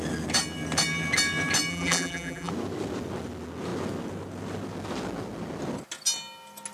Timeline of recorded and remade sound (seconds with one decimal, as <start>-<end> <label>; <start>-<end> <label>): 0.0-1.7 recorded; 1.7-2.5 remade; 2.5-6.7 recorded